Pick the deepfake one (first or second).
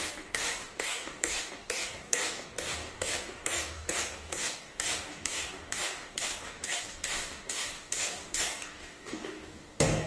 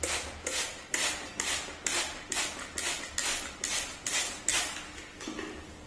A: first